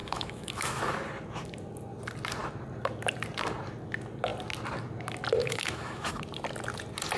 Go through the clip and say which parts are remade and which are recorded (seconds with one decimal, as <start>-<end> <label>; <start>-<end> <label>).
0.0-0.8 remade; 0.8-5.4 recorded; 5.4-6.2 remade; 6.2-7.2 recorded